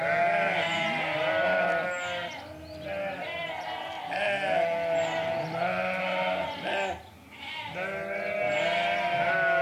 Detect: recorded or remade recorded